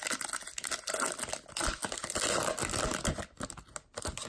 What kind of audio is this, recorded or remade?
recorded